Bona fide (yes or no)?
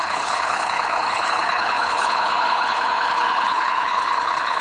no